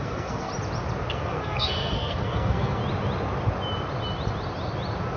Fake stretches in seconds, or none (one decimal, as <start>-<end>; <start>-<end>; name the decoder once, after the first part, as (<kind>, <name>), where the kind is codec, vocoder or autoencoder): 0.0-0.5 (codec, SNAC); 1.1-2.8